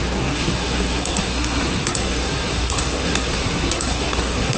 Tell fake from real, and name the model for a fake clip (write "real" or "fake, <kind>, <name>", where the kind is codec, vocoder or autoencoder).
fake, codec, SNAC